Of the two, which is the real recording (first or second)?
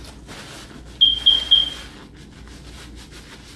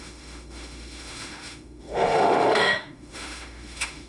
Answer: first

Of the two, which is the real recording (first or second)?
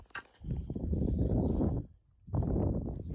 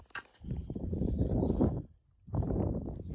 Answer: first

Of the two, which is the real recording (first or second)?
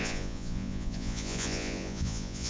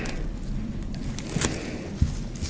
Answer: second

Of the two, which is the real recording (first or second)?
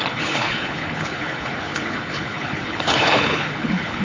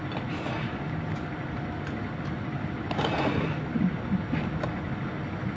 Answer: second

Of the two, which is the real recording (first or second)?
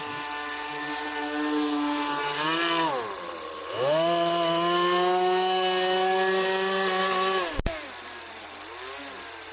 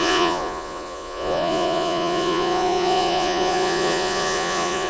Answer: first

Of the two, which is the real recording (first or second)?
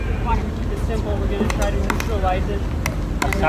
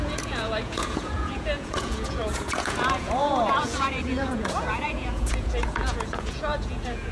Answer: first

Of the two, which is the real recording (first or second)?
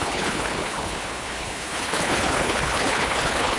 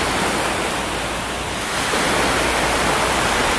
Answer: second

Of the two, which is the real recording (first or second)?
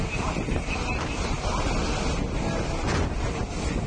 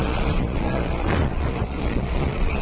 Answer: first